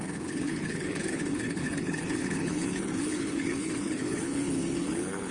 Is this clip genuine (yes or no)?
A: no